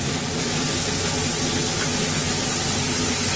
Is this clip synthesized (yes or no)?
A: no